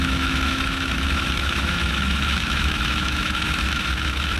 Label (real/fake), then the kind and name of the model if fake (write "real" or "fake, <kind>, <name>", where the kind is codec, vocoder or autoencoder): fake, autoencoder, DAC-VAE